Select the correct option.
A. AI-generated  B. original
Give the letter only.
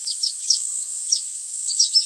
A